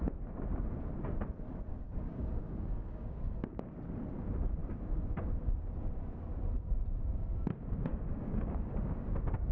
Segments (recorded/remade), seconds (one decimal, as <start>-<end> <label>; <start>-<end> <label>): 0.0-1.7 recorded; 1.7-3.6 remade; 3.6-7.9 recorded; 7.9-9.1 remade; 9.1-9.5 recorded